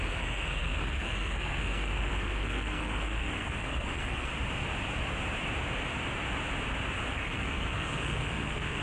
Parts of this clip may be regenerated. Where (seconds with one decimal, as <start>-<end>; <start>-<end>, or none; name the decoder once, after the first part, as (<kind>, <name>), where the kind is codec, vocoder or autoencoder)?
0.0-4.3 (codec, SNAC); 7.1-8.8